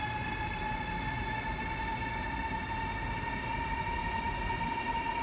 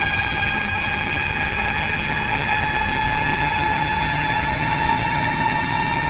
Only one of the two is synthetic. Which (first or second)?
second